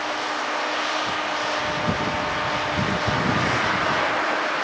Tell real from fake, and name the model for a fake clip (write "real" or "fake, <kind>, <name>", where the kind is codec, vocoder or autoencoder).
real